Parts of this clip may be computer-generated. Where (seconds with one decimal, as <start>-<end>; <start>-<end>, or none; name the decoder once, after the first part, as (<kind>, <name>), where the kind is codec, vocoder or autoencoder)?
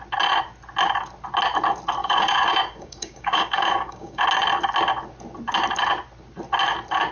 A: 2.0-4.2 (codec, DAC)